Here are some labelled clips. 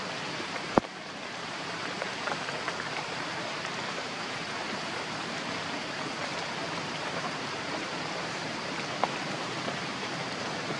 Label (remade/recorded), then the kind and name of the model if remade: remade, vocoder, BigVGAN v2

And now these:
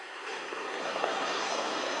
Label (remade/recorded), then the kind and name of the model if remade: remade, codec, SNAC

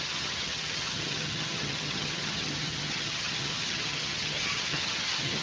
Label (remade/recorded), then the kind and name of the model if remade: remade, vocoder, HiFi-GAN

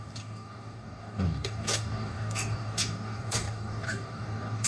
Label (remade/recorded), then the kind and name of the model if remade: remade, codec, DAC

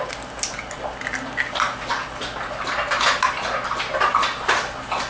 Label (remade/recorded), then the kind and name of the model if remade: recorded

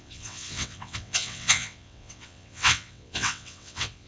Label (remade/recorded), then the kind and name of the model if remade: remade, vocoder, WaveNeXt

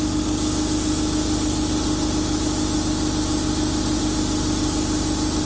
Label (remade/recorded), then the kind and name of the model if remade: recorded